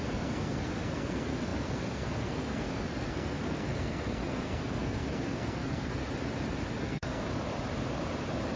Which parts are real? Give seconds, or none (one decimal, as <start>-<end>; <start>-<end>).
6.0-6.8; 7.3-8.6